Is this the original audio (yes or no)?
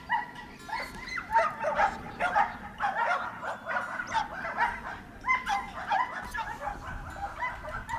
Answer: yes